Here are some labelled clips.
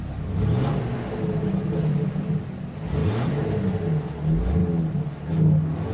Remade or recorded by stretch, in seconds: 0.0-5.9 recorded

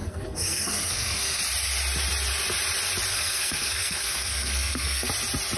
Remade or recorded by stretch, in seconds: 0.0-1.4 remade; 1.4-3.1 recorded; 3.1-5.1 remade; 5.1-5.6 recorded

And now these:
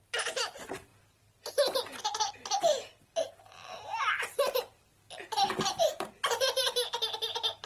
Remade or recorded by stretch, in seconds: 0.0-7.7 recorded

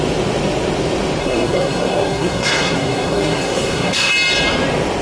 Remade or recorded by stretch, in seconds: 0.0-1.2 recorded; 1.2-4.1 remade; 4.1-5.0 recorded

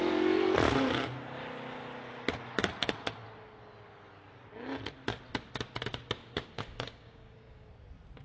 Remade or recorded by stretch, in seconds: 0.0-6.2 recorded; 6.2-7.7 remade; 7.7-8.2 recorded